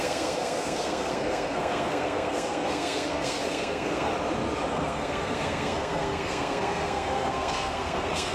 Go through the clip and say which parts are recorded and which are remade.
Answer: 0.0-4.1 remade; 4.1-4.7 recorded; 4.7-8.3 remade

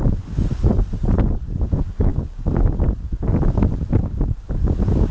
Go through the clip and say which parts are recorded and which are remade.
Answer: 0.0-2.1 recorded; 2.1-2.6 remade; 2.6-4.0 recorded; 4.0-4.5 remade; 4.5-5.1 recorded

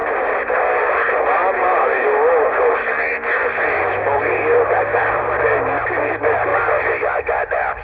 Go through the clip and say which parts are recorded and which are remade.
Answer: 0.0-4.7 recorded; 4.7-7.8 remade

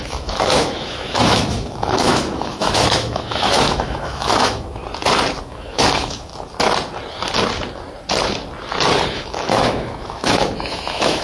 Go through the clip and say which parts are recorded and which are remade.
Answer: 0.0-4.8 remade; 4.8-5.4 recorded; 5.4-6.3 remade; 6.3-9.1 recorded; 9.1-11.2 remade

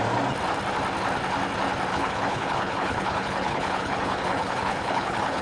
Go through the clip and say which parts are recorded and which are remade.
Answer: 0.0-1.9 recorded; 1.9-5.4 remade

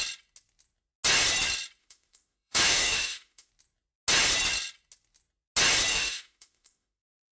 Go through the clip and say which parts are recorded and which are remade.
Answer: 0.0-1.8 recorded; 1.8-3.5 remade; 3.5-5.9 recorded; 5.9-7.3 remade

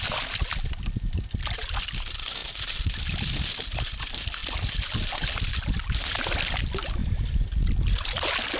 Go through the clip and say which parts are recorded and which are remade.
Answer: 0.0-8.6 recorded